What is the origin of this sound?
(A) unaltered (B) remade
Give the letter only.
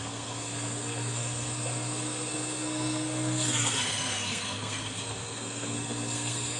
B